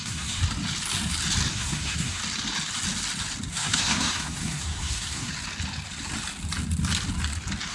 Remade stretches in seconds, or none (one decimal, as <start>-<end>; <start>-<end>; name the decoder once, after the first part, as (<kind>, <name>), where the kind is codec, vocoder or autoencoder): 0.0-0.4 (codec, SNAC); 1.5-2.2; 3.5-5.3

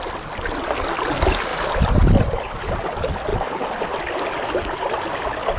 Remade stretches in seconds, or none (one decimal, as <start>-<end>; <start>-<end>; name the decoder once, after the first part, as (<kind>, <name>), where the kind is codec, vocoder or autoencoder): none

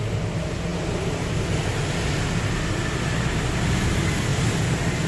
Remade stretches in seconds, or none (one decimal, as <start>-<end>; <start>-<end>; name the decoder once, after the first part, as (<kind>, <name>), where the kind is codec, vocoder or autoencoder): none

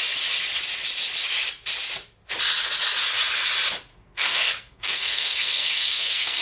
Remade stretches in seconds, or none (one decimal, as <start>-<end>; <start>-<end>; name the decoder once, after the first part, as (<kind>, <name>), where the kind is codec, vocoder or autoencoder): 3.9-6.4 (codec, SNAC)

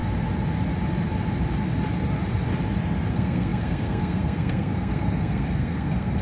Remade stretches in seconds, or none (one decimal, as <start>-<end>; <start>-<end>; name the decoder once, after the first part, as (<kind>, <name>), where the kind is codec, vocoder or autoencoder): 3.1-6.2 (codec, SNAC)

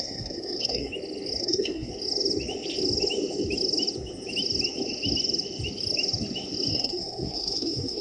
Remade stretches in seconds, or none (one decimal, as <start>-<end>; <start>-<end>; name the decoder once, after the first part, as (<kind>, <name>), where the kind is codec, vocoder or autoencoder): 0.0-0.9 (codec, SNAC); 1.4-1.9; 6.7-8.0

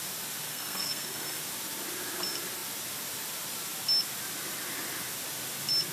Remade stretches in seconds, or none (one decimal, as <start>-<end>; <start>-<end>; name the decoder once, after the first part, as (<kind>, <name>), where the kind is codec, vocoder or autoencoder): 0.5-1.4 (codec, SNAC)